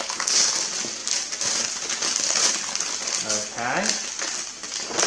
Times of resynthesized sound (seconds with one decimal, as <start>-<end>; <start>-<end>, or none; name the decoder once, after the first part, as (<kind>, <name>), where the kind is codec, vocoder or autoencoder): none